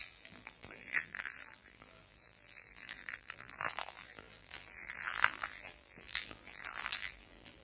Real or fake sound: fake